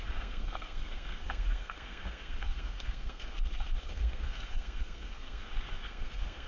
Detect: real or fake fake